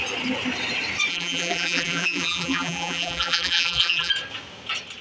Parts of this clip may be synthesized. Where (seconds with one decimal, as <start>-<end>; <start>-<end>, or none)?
1.1-4.1